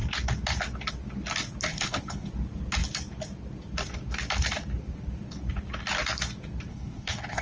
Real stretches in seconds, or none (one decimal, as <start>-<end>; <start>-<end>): 0.0-1.7; 2.3-6.7